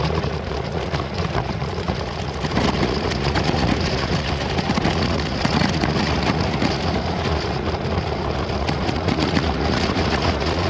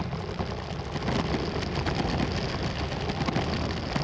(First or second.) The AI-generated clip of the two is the first